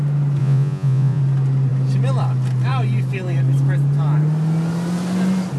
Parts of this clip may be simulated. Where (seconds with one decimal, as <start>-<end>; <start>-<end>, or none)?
0.4-1.2